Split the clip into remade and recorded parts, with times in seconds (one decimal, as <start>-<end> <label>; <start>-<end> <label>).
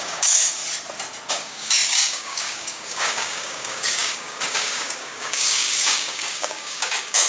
0.0-0.6 remade; 0.6-1.3 recorded; 1.3-7.3 remade